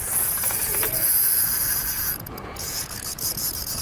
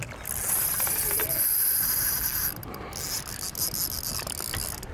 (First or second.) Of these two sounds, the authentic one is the second